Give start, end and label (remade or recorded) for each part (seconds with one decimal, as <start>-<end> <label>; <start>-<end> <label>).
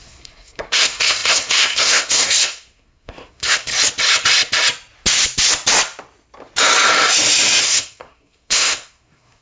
0.0-3.7 remade; 3.7-7.6 recorded; 7.6-9.4 remade